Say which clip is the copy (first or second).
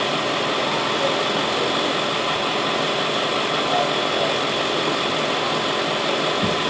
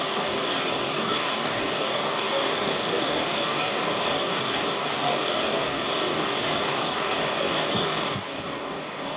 second